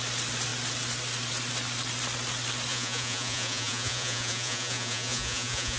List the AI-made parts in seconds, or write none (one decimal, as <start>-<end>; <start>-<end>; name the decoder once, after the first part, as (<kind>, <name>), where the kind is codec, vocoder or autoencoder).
2.7-5.8 (vocoder, Vocos)